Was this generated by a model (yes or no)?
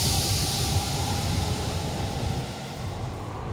no